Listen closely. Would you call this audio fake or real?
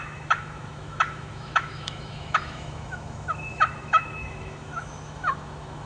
fake